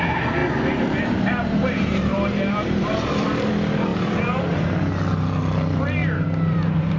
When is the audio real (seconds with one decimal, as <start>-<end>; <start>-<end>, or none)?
0.0-0.4; 3.5-6.0